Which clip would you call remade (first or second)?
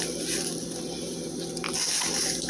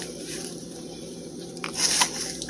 second